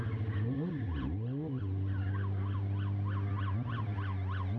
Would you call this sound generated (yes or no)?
no